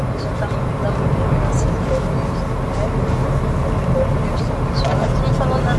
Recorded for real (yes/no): yes